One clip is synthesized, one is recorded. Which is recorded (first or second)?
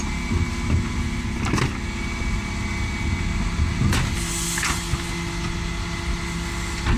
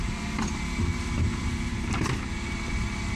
first